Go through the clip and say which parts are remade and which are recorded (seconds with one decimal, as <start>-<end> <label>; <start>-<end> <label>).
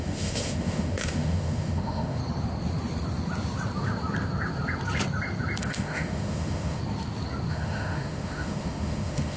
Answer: 0.0-2.2 remade; 2.2-5.6 recorded; 5.6-6.8 remade; 6.8-7.5 recorded; 7.5-9.4 remade